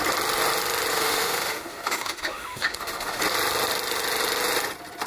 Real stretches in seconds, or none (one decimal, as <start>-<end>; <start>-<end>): 0.0-0.9; 3.2-5.1